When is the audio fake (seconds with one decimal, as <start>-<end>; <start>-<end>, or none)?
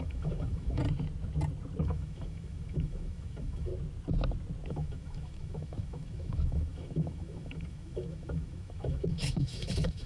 0.0-0.8; 1.8-3.7; 4.7-10.1